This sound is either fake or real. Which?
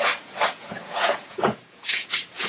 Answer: fake